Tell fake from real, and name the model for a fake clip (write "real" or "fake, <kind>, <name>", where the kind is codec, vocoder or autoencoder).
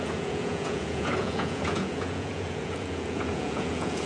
fake, vocoder, Vocos